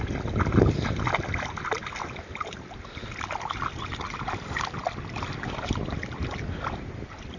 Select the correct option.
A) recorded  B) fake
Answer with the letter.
A